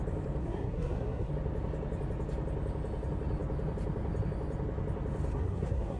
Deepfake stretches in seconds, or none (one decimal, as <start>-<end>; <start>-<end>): 0.4-1.3; 5.3-6.0